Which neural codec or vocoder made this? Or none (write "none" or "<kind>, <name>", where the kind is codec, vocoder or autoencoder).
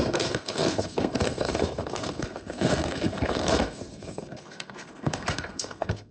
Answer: codec, SNAC